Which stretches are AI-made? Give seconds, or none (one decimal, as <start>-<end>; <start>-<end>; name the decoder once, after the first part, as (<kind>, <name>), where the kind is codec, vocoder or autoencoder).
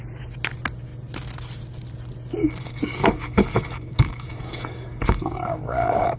2.4-6.2 (codec, DAC)